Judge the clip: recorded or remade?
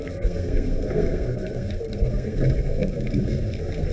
remade